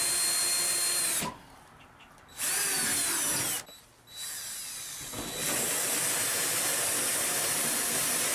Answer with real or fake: real